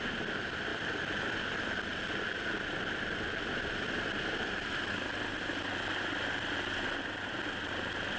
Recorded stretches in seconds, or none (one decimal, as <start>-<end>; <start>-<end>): 0.0-0.7; 4.5-8.2